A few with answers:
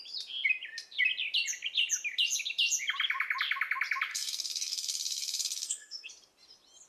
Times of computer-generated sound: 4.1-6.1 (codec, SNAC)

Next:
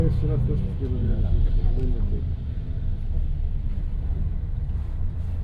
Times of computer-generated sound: none

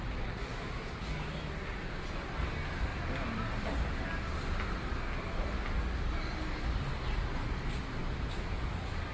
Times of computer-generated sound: 0.5-1.5 (autoencoder, DAC-VAE); 8.0-8.6

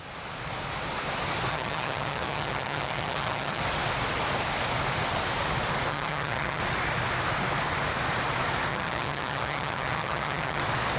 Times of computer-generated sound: 1.5-3.6 (vocoder, HiFi-GAN); 5.9-6.6; 8.7-10.6